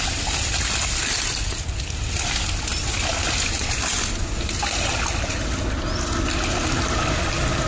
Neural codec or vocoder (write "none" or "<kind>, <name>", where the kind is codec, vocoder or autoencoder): none